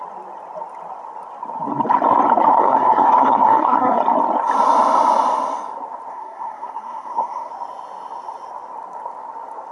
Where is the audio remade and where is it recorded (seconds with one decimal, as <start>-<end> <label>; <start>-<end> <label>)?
0.0-2.5 recorded; 2.5-4.0 remade; 4.0-6.1 recorded; 6.1-7.5 remade; 7.5-9.7 recorded